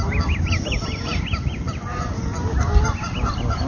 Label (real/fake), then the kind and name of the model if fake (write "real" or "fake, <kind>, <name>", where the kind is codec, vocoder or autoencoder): real